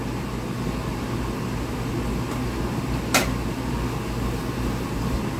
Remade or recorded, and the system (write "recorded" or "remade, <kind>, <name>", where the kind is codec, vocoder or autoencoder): recorded